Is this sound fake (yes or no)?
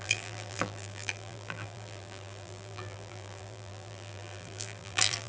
yes